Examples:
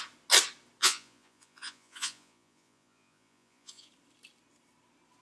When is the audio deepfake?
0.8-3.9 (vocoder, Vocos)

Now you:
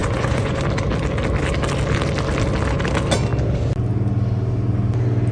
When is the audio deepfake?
0.0-0.6 (vocoder, Vocos)

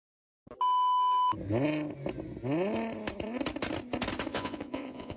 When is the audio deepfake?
4.3-5.2 (vocoder, Vocos)